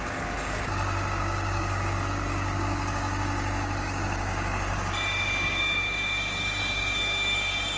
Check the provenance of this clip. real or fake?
fake